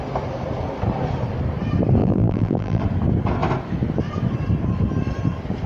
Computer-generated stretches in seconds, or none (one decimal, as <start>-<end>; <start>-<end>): 2.0-2.8